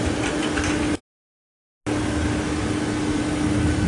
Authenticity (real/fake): real